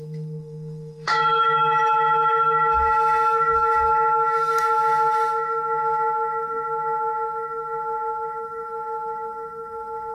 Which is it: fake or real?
fake